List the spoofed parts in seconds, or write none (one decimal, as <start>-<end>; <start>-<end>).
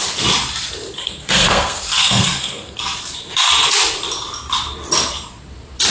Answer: 1.0-2.8